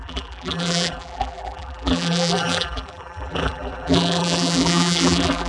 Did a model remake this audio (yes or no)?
yes